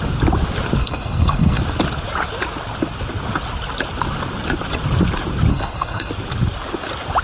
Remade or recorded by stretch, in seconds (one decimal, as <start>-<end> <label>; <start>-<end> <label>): 0.0-0.8 recorded; 0.8-1.6 remade; 1.6-5.5 recorded; 5.5-6.1 remade; 6.1-7.2 recorded